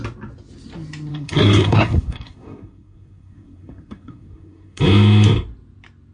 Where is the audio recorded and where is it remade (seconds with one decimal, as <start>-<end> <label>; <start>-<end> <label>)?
0.0-1.1 recorded; 1.1-4.8 remade; 4.8-6.1 recorded